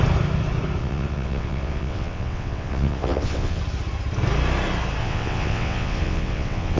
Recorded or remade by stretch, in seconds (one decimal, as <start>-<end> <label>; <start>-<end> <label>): 0.0-0.8 recorded; 0.8-3.6 remade; 3.6-5.0 recorded; 5.0-6.8 remade